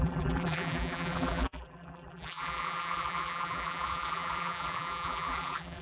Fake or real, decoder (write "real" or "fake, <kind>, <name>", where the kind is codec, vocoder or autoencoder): fake, vocoder, BigVGAN v2